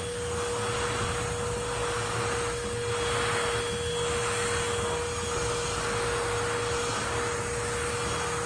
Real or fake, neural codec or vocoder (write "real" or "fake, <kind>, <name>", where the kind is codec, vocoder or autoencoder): real